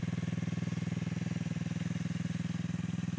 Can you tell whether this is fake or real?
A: real